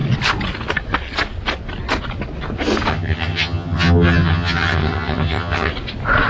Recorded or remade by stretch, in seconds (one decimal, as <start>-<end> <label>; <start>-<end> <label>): 0.0-2.9 recorded; 2.9-5.7 remade; 5.7-6.3 recorded